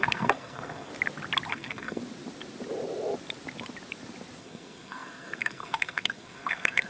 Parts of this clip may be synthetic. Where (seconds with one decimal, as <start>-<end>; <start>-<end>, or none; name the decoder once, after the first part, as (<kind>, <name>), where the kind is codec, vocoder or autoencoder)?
0.0-0.9 (codec, SNAC); 1.5-2.0; 4.4-6.9

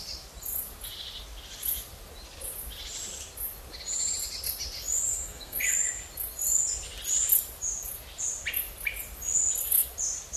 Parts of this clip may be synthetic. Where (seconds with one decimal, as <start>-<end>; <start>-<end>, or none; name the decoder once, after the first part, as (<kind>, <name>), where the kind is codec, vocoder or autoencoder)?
5.1-5.6 (codec, SNAC)

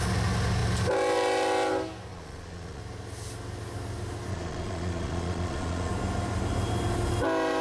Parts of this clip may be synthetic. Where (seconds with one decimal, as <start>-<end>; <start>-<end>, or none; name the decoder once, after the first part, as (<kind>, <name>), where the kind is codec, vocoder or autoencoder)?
2.1-2.8 (vocoder, Vocos); 4.3-5.9

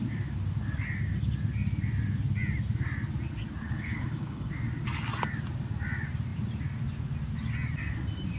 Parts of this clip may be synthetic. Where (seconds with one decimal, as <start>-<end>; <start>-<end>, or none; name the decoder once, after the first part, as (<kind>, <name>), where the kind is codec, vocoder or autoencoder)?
3.6-4.5 (codec, HILCodec)

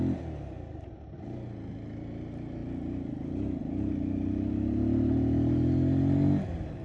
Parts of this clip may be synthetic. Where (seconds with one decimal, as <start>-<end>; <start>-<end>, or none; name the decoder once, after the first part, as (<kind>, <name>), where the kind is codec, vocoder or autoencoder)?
none

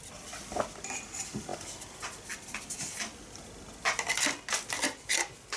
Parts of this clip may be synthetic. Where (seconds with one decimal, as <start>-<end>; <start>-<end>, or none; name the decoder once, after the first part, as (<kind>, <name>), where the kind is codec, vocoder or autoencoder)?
none

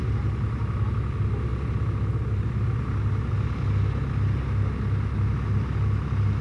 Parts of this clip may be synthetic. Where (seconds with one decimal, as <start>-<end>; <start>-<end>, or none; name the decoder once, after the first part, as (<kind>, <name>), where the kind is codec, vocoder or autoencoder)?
none